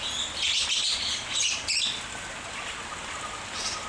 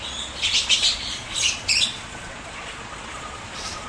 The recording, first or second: first